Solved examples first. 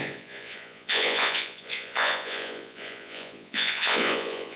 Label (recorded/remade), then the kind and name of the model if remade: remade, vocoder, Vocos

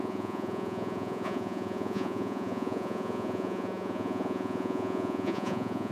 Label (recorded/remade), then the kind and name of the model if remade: remade, vocoder, Vocos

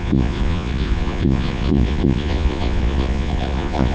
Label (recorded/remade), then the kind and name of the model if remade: remade, vocoder, Vocos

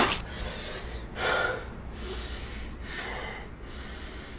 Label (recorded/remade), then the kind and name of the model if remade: recorded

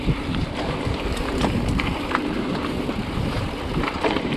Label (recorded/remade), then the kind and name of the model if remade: remade, vocoder, BigVGAN v2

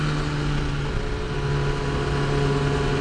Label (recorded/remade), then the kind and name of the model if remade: recorded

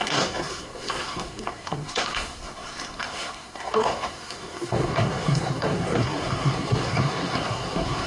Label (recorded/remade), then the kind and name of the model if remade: remade, codec, SNAC